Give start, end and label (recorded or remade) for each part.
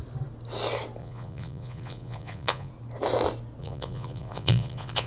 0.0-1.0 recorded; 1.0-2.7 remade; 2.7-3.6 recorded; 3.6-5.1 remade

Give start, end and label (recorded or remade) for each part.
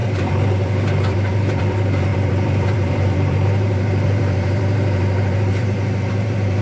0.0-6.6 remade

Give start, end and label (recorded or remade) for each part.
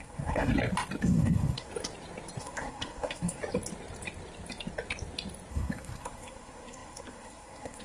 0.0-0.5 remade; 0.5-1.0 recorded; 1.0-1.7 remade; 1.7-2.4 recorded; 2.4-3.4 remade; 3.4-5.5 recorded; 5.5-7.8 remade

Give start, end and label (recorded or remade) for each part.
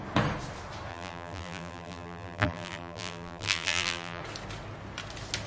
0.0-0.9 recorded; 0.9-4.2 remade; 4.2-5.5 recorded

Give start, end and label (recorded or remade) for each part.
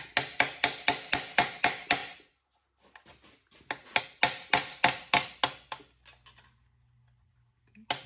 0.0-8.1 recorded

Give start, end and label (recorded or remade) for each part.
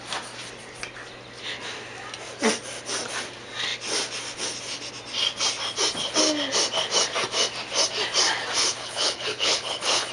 0.0-8.6 recorded; 8.6-10.1 remade